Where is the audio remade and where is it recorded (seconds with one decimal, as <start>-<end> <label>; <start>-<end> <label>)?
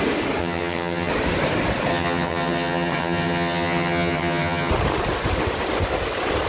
0.0-0.4 recorded; 0.4-1.1 remade; 1.1-1.9 recorded; 1.9-4.7 remade; 4.7-6.5 recorded